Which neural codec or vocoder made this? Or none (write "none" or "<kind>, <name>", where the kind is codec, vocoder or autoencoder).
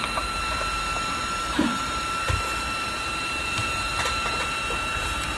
vocoder, BigVGAN v2